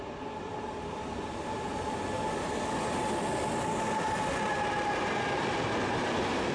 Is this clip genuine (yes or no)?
yes